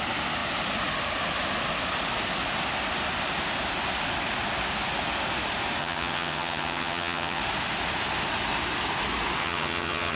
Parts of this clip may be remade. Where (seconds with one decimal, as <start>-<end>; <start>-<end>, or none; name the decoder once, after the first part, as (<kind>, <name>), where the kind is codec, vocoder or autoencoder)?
5.8-7.4 (vocoder, HiFi-GAN); 9.4-10.2